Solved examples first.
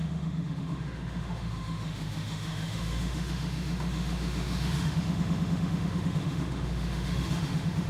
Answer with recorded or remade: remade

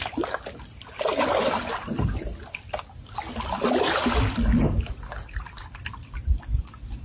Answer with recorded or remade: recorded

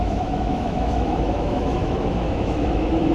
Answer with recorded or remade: remade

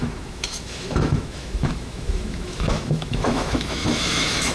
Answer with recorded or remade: remade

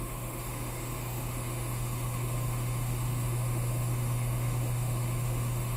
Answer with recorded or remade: remade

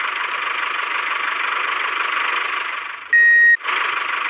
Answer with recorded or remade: recorded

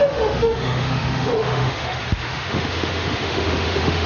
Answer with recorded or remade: remade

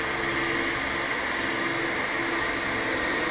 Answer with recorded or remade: recorded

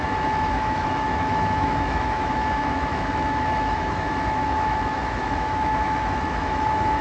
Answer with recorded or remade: remade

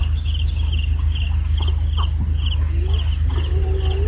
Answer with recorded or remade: recorded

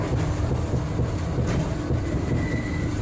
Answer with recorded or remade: recorded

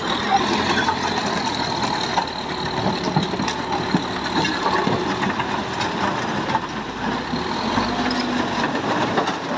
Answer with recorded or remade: recorded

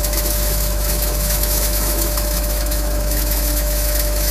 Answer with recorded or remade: remade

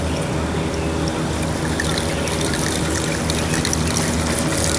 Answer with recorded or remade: recorded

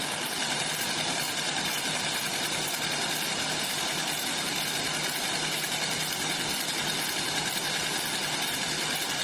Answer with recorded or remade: recorded